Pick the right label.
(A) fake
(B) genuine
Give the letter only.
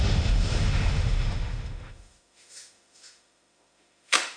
A